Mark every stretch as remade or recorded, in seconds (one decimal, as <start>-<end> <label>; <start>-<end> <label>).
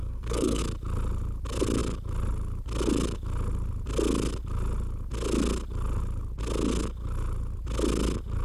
0.0-0.6 remade; 0.6-8.4 recorded